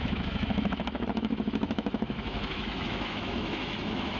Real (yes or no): no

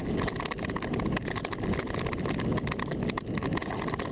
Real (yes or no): yes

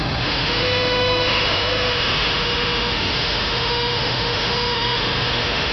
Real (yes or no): no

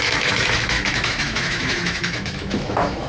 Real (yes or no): no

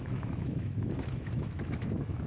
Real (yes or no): no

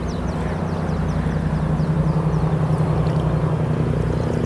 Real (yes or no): yes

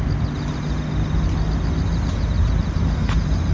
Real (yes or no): yes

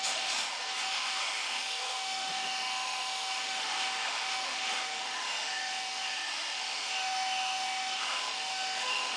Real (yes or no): no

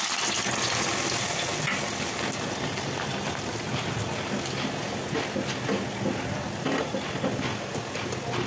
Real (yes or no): yes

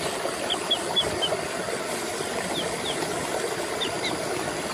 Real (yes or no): yes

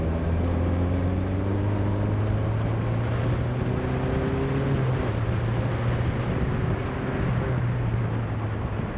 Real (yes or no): yes